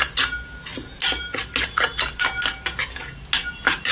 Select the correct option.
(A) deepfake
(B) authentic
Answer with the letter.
B